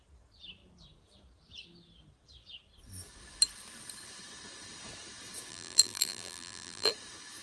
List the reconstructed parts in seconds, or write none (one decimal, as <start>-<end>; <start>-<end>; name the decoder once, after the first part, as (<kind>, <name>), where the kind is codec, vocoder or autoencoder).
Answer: 5.5-6.9 (vocoder, BigVGAN v2)